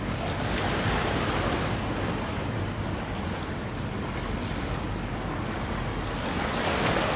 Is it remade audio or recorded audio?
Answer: recorded